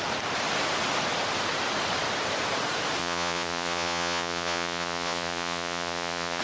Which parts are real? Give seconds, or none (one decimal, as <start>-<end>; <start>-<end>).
0.0-3.0